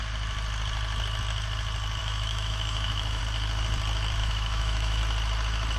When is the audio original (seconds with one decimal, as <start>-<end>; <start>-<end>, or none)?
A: 0.0-2.0; 3.2-4.2; 5.0-5.8